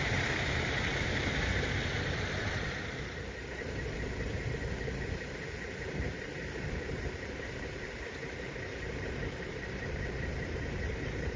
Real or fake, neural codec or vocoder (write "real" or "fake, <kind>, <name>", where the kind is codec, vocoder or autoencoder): fake, vocoder, BigVGAN v2